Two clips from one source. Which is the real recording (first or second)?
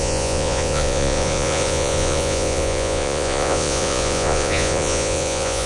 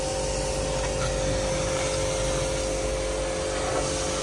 second